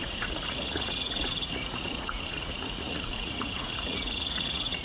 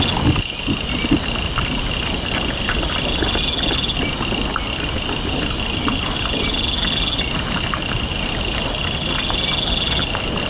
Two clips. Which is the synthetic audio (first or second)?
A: first